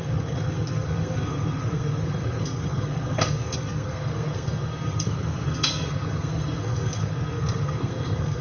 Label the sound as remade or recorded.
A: remade